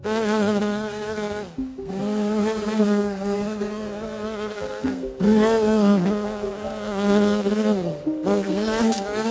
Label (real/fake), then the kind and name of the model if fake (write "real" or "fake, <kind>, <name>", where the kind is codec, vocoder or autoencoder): fake, codec, SNAC